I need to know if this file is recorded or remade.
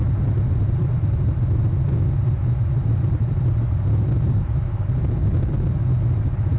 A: remade